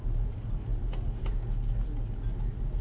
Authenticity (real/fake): real